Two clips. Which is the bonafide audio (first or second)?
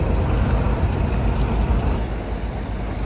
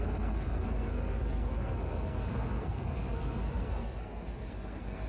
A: first